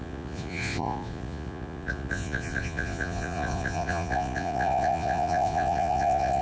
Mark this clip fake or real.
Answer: fake